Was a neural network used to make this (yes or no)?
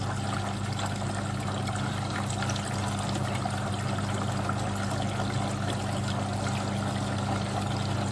no